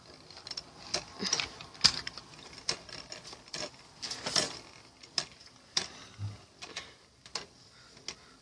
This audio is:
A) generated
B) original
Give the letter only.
B